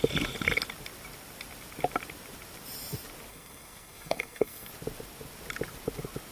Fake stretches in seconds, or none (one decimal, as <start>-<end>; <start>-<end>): 3.3-4.7